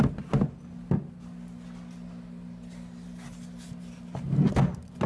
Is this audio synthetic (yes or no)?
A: no